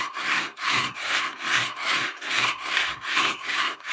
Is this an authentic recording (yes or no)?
no